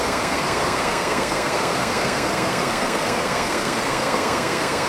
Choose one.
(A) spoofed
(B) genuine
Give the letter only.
A